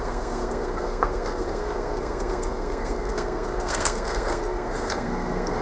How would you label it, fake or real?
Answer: fake